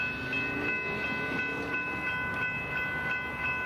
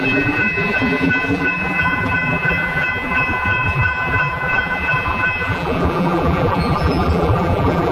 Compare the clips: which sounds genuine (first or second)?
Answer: first